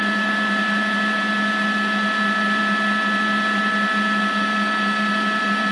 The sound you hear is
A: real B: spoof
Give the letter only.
A